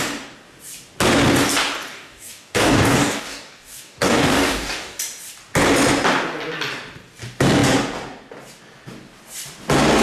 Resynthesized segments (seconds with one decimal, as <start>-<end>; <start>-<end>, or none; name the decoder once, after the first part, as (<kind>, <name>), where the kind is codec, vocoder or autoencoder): 1.9-5.0 (codec, DAC)